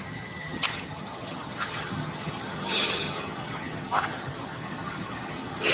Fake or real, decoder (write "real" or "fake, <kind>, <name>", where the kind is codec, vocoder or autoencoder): fake, vocoder, HiFi-GAN